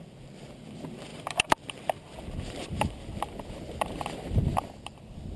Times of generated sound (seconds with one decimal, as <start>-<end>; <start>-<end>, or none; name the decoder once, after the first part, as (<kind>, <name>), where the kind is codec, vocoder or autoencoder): none